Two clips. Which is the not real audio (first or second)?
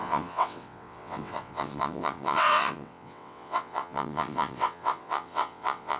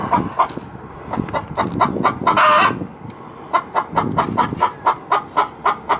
first